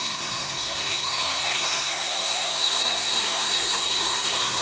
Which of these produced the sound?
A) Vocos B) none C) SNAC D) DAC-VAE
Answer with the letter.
C